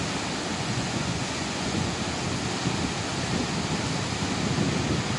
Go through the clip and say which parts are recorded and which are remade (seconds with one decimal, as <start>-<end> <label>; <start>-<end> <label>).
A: 0.0-0.5 recorded; 0.5-2.0 remade; 2.0-5.2 recorded